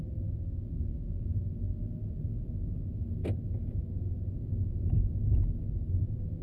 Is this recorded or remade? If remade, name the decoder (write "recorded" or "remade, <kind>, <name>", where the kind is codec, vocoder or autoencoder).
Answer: recorded